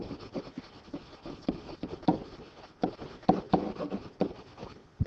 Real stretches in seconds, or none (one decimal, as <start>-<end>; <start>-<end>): 0.0-5.1